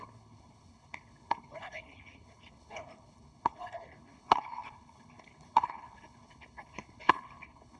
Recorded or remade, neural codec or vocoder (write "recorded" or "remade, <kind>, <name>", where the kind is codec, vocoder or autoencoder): remade, codec, HILCodec